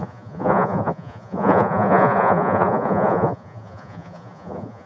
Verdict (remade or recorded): remade